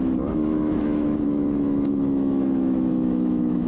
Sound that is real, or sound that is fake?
fake